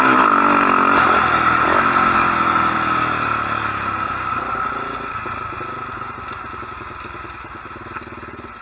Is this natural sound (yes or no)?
yes